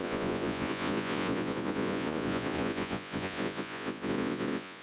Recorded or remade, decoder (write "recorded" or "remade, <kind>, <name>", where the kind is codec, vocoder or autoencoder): remade, vocoder, Vocos